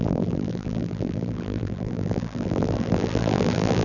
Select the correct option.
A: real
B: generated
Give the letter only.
B